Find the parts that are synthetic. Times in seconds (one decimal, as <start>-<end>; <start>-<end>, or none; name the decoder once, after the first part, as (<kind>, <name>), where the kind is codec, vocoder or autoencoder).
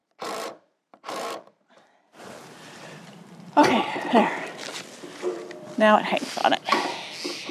0.0-4.5 (vocoder, BigVGAN v2)